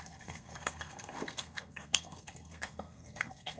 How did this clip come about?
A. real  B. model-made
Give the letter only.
B